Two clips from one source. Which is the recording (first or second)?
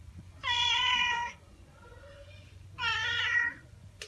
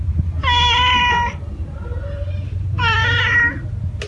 second